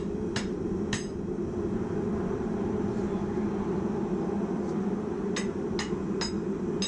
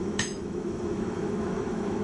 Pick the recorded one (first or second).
first